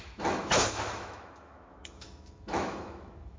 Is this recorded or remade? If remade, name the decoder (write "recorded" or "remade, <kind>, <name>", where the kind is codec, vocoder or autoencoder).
remade, autoencoder, DAC-VAE